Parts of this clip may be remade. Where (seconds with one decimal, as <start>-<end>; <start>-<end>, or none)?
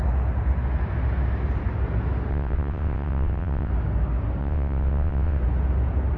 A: 2.3-3.7; 4.4-5.4